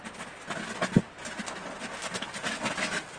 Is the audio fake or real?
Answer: real